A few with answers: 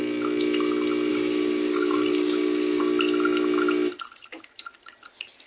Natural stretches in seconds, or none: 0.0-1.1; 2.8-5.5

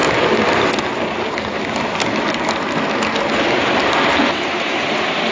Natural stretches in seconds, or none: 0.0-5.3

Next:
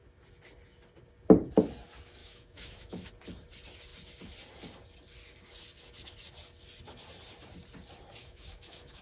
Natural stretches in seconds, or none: 0.0-2.2; 3.1-8.2

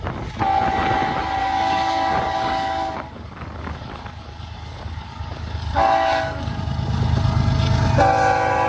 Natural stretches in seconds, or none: 0.0-1.4; 6.6-8.7

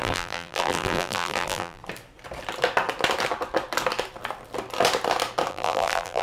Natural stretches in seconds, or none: 1.8-5.5

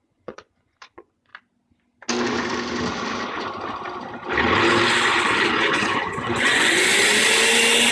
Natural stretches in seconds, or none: 1.3-5.5; 6.9-7.9